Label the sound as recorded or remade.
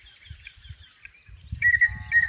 recorded